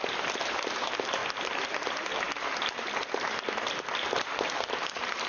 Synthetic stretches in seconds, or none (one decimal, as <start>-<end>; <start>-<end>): 0.0-1.2; 4.4-5.3